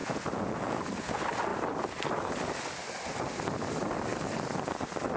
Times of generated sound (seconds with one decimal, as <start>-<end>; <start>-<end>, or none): 0.0-0.8